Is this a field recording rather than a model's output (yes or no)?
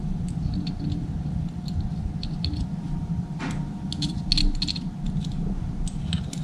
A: yes